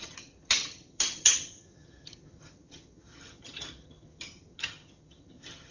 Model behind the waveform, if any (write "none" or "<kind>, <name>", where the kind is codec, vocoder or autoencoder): vocoder, HiFi-GAN